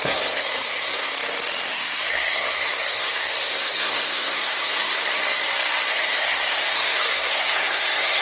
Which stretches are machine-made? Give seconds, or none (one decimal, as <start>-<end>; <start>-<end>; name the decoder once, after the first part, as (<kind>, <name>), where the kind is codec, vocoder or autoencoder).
0.0-1.1 (codec, SNAC); 1.7-5.2; 5.9-8.2